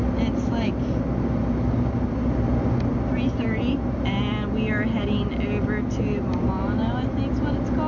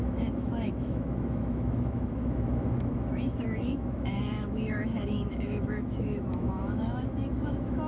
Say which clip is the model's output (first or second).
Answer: second